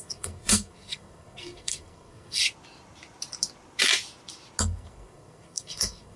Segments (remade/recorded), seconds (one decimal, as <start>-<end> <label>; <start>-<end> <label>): 0.0-2.4 remade; 2.4-4.6 recorded; 4.6-6.2 remade